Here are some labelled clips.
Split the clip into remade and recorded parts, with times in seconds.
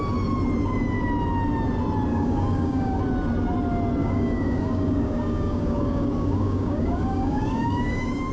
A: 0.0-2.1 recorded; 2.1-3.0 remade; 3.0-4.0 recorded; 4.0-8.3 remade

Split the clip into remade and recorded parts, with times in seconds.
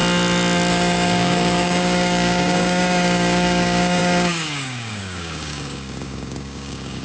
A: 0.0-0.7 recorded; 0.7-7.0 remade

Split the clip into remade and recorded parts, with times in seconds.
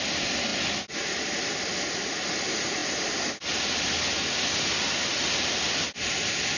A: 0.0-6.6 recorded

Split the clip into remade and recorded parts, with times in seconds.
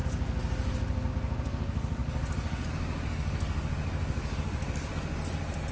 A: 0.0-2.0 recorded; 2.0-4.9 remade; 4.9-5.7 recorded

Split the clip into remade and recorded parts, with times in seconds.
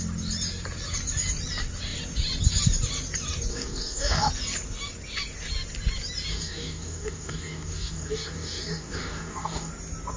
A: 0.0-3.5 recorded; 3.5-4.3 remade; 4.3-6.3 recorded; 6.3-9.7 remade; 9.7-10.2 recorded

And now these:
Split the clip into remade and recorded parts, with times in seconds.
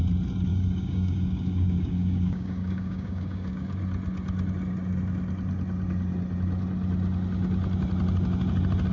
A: 0.0-0.5 recorded; 0.5-3.8 remade; 3.8-8.9 recorded